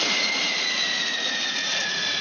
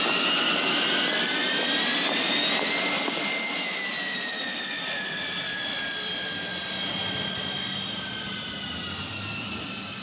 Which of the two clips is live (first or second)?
second